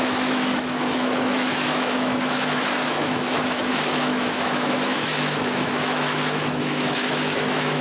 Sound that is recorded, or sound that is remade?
remade